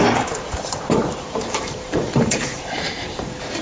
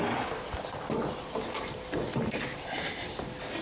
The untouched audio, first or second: second